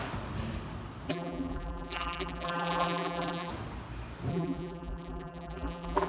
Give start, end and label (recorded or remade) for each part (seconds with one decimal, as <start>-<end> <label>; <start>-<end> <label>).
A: 0.0-1.1 recorded; 1.1-3.5 remade; 3.5-4.3 recorded; 4.3-6.1 remade

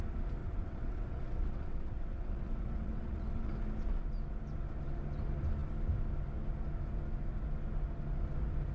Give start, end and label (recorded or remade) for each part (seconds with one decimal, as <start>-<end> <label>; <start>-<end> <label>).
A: 0.0-0.4 recorded; 0.4-3.5 remade; 3.5-8.7 recorded

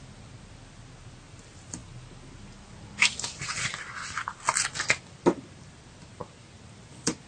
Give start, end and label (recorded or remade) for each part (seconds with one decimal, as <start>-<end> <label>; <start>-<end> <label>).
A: 0.0-7.3 recorded

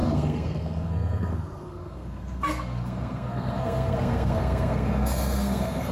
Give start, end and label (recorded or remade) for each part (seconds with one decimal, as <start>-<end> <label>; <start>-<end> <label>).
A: 0.0-5.9 remade

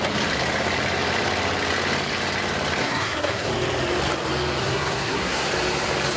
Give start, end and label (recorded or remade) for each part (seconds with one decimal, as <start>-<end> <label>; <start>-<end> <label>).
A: 0.0-2.8 recorded; 2.8-3.5 remade; 3.5-4.6 recorded; 4.6-5.5 remade; 5.5-6.2 recorded